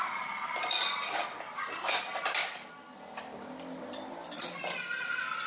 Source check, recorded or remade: recorded